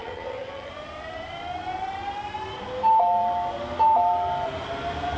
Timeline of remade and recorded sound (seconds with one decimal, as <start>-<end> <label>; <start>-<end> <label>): 0.0-0.7 remade; 0.7-5.2 recorded